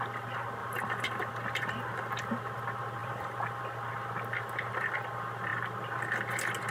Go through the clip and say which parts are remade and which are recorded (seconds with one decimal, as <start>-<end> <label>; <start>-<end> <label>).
0.0-0.6 recorded; 0.6-1.3 remade; 1.3-3.0 recorded; 3.0-3.6 remade; 3.6-6.7 recorded

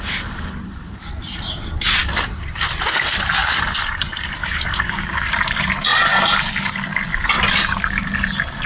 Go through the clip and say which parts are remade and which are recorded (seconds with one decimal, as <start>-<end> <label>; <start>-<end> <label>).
0.0-5.9 remade; 5.9-7.7 recorded; 7.7-8.7 remade

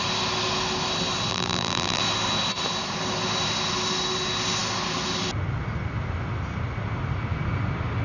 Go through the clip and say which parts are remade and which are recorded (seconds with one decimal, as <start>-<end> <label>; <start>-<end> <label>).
0.0-1.3 recorded; 1.3-2.0 remade; 2.0-8.0 recorded

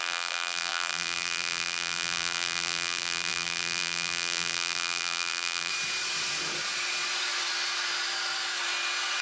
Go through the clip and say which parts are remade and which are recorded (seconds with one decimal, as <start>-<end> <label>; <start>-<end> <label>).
0.0-5.7 remade; 5.7-9.2 recorded

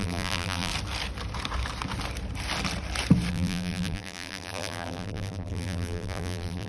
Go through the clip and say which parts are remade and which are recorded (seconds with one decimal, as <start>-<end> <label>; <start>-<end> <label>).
0.0-0.7 remade; 0.7-3.3 recorded; 3.3-6.7 remade

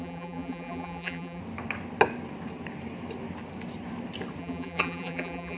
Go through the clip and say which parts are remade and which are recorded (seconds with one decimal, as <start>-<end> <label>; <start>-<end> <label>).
0.0-1.4 remade; 1.4-4.4 recorded; 4.4-5.6 remade

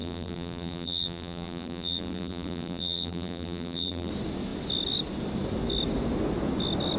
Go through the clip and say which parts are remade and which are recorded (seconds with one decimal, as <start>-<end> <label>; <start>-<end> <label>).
0.0-4.1 remade; 4.1-7.0 recorded

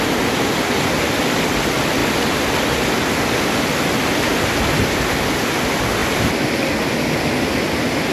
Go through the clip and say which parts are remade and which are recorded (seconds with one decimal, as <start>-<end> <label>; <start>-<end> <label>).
0.0-8.1 recorded